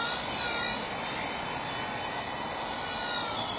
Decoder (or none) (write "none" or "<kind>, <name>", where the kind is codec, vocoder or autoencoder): none